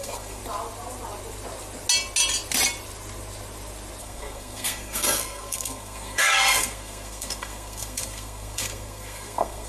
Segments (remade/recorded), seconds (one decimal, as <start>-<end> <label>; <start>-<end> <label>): 0.0-0.4 remade; 0.4-4.0 recorded; 4.0-9.7 remade

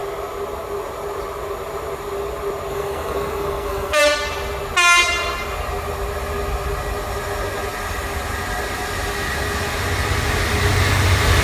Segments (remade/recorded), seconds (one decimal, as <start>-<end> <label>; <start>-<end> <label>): 0.0-2.7 recorded; 2.7-4.0 remade; 4.0-11.4 recorded

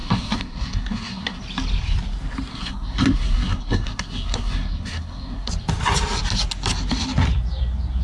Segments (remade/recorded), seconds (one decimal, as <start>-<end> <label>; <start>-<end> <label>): 0.0-1.4 remade; 1.4-2.5 recorded; 2.5-5.5 remade; 5.5-8.0 recorded

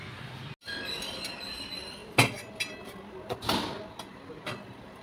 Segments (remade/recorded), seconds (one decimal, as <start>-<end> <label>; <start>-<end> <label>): 0.0-5.0 recorded

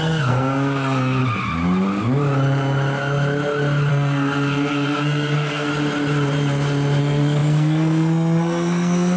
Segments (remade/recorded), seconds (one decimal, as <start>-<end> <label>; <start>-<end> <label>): 0.0-1.2 remade; 1.2-3.9 recorded; 3.9-5.7 remade; 5.7-7.0 recorded; 7.0-9.2 remade

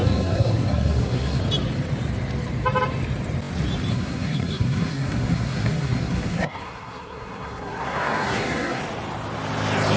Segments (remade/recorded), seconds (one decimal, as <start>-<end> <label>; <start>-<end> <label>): 0.0-1.4 remade; 1.4-3.9 recorded; 3.9-8.8 remade; 8.8-10.0 recorded